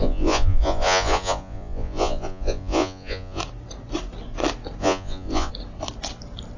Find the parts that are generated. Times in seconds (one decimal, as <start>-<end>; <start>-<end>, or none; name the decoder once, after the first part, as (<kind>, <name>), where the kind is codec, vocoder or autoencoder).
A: 0.0-3.4 (vocoder, Vocos); 4.8-5.5